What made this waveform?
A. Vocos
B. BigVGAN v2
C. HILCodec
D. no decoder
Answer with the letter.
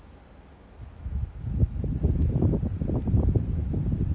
D